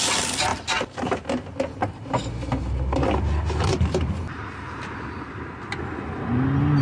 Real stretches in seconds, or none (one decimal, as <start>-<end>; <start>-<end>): 0.0-6.8